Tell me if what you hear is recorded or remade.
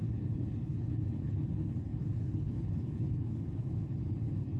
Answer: remade